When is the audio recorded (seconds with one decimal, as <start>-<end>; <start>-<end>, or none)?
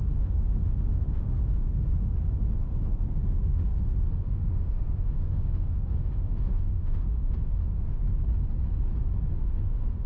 8.0-9.3